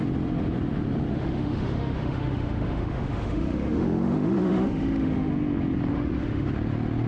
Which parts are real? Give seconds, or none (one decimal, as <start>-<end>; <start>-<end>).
0.0-1.1; 5.3-5.9; 6.5-7.1